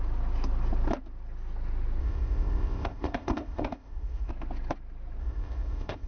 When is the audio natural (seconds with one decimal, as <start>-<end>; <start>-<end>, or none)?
0.0-2.0; 4.3-5.2